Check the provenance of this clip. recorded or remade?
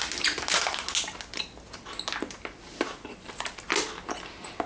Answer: recorded